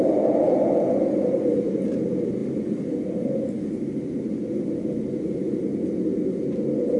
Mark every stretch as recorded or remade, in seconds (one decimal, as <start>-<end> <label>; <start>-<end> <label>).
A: 0.0-7.0 recorded